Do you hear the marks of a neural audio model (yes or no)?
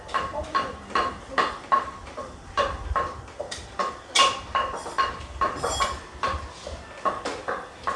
yes